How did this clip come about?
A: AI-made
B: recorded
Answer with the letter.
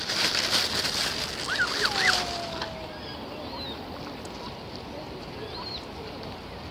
B